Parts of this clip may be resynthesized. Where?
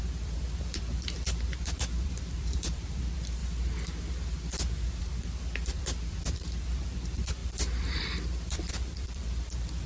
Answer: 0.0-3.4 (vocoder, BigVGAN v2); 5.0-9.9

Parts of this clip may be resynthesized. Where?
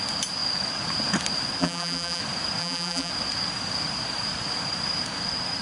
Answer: 1.6-2.2 (vocoder, BigVGAN v2); 2.6-3.1